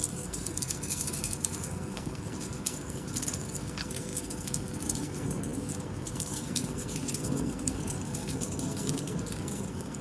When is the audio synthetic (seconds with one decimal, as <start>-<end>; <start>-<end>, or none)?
0.0-10.0